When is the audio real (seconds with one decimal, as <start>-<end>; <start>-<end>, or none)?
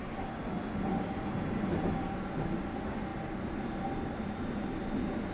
0.0-5.3